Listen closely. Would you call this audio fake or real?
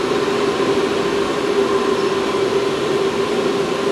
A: real